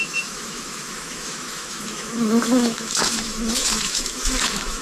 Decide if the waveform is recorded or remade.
remade